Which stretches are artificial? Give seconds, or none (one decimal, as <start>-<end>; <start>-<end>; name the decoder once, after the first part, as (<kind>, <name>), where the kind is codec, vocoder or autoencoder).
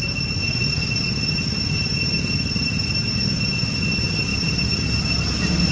1.9-2.9 (vocoder, BigVGAN v2); 4.3-5.7